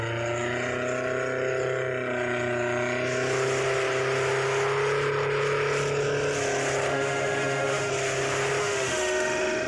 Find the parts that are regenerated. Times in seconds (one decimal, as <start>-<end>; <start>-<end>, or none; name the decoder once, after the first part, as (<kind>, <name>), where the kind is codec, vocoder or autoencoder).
6.9-7.9 (autoencoder, DAC-VAE); 8.6-9.7